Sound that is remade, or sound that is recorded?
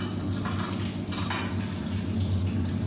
recorded